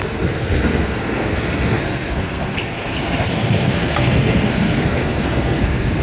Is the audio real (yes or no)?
no